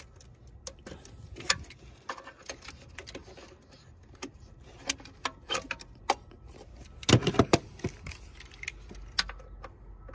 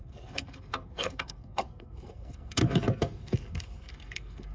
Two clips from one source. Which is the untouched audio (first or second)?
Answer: first